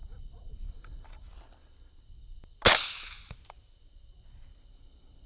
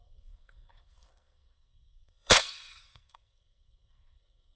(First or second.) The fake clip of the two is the second